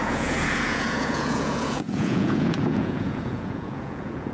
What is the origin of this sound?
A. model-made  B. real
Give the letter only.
A